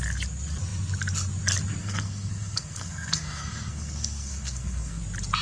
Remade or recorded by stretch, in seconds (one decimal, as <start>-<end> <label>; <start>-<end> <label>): 0.0-1.8 recorded; 1.8-5.0 remade; 5.0-5.4 recorded